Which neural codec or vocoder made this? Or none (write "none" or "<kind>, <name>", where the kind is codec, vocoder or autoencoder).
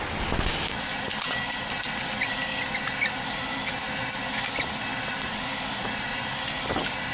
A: none